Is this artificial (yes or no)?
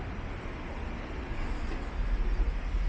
no